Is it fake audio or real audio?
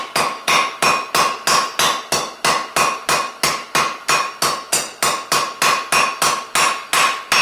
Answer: real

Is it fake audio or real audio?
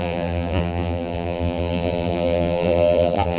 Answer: fake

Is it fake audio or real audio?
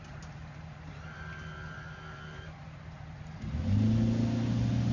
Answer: real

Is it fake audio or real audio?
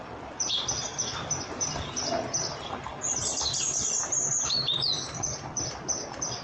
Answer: fake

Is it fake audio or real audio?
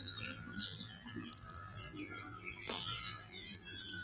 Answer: fake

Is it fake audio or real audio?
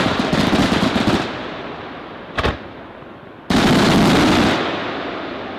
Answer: real